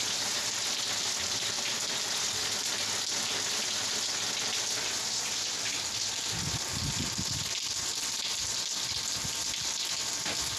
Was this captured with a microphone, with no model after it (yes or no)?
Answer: yes